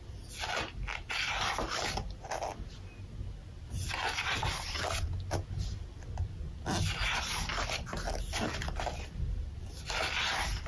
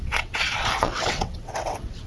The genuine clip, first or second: first